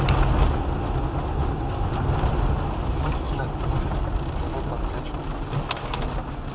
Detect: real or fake real